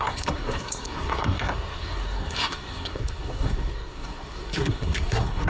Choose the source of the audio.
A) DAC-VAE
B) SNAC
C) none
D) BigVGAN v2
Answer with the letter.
B